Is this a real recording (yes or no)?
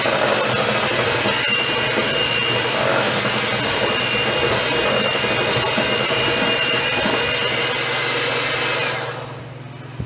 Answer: yes